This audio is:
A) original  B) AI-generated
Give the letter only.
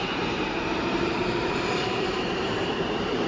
B